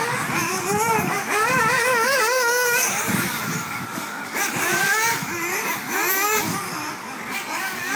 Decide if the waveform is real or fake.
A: fake